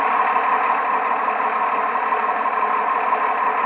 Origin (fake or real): real